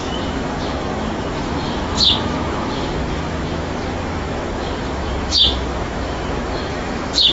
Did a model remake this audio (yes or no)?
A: yes